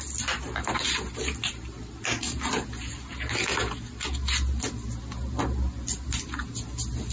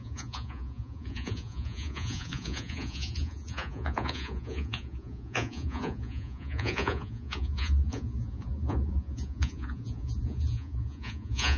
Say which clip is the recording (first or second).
first